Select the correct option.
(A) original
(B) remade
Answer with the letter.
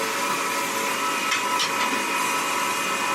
A